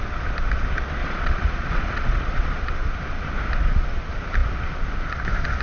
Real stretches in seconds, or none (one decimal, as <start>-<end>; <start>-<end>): 0.0-1.0; 2.6-5.6